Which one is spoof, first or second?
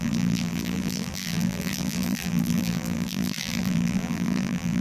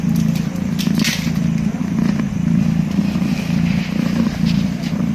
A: first